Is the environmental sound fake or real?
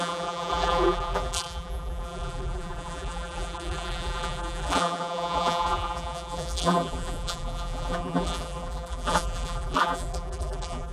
fake